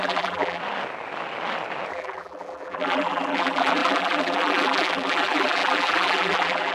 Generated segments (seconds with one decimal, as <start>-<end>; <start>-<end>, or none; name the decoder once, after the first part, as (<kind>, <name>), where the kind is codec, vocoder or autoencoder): 0.0-0.6 (vocoder, BigVGAN v2); 1.9-6.7